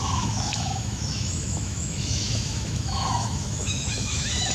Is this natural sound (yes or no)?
no